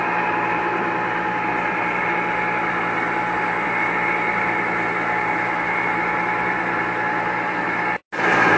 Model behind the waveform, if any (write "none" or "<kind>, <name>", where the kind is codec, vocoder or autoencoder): none